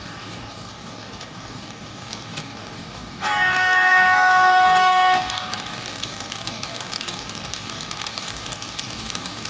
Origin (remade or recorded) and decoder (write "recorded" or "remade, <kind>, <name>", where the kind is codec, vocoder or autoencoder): remade, codec, DAC